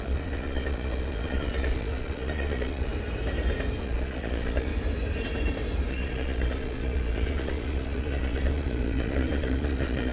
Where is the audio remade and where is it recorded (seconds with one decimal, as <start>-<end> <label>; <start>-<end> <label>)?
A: 0.0-2.9 remade; 2.9-3.8 recorded; 3.8-4.7 remade; 4.7-5.9 recorded; 5.9-10.1 remade